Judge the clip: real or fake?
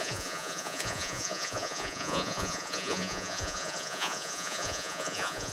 fake